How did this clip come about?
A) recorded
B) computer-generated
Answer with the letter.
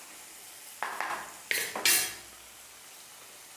A